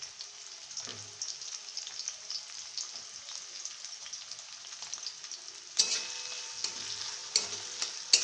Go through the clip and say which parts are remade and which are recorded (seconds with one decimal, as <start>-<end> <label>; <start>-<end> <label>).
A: 0.0-8.2 recorded